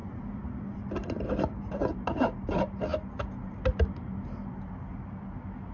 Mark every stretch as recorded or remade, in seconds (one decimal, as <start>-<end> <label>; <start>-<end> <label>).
0.0-1.8 remade; 1.8-5.7 recorded